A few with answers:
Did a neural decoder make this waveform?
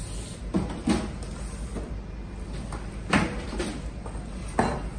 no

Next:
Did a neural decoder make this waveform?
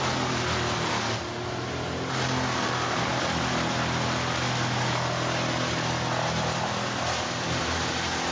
no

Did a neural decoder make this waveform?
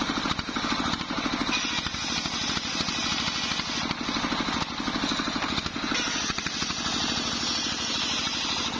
no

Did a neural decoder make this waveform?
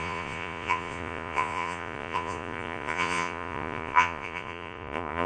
yes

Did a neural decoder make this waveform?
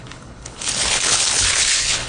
yes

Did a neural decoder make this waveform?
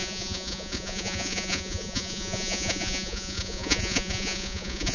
yes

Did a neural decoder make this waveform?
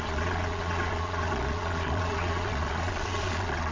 yes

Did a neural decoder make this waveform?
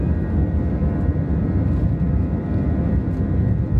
no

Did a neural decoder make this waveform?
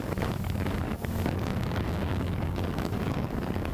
yes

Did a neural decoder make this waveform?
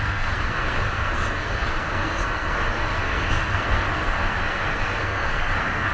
yes